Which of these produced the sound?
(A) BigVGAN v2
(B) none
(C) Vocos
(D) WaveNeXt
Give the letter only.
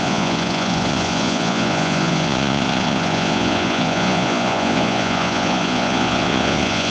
C